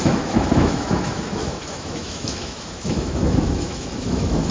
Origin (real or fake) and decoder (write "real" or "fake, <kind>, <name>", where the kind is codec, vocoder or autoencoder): fake, autoencoder, DAC-VAE